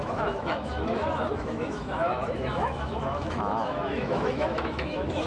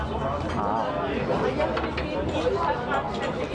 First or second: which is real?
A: second